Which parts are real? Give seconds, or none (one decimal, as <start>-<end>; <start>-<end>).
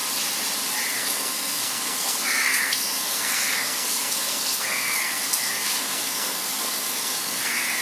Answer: 0.0-0.9